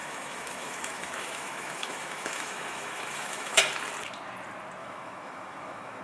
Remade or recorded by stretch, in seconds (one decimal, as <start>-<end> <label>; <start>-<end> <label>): 0.0-3.6 remade; 3.6-4.8 recorded; 4.8-6.0 remade